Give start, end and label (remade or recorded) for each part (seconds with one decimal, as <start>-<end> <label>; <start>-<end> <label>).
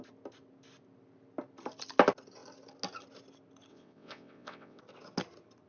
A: 0.0-3.7 recorded; 3.7-4.8 remade; 4.8-5.7 recorded